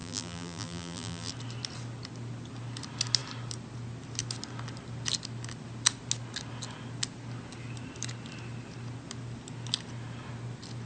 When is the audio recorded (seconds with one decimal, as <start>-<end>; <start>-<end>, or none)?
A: 1.3-10.9